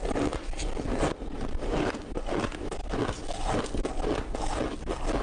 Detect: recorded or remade recorded